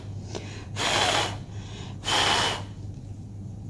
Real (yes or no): yes